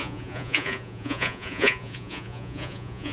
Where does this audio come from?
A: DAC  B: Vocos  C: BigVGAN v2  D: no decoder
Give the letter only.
B